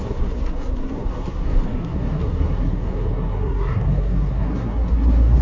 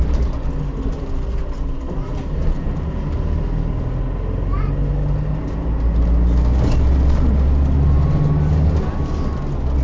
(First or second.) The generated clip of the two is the first